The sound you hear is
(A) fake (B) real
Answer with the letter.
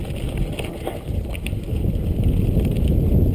B